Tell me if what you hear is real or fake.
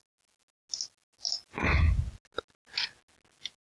real